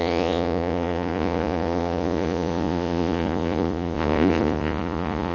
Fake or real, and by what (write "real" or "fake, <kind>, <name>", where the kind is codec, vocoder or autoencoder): fake, vocoder, Vocos